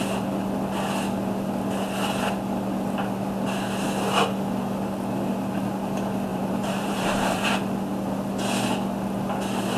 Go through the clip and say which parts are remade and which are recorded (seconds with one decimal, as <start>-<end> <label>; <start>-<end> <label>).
0.0-6.3 recorded; 6.3-7.5 remade; 7.5-9.8 recorded